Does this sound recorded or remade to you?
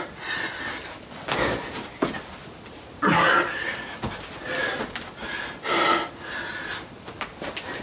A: recorded